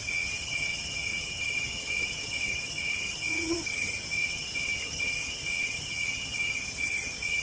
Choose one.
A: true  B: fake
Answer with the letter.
B